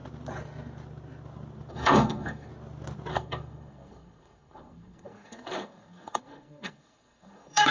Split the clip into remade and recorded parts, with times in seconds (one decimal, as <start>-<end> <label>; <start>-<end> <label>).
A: 0.0-1.7 recorded; 1.7-2.5 remade; 2.5-3.1 recorded; 3.1-7.7 remade